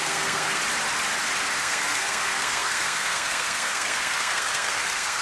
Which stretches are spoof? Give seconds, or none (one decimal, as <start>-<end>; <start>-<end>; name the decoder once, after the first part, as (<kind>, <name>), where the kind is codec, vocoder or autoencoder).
0.0-0.6 (codec, SNAC); 1.6-5.2